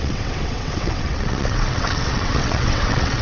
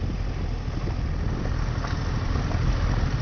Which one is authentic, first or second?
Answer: second